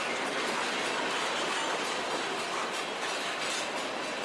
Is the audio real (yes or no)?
yes